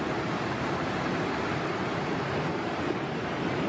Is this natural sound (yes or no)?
yes